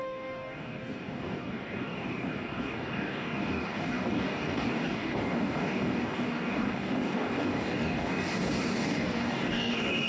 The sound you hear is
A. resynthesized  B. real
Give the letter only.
A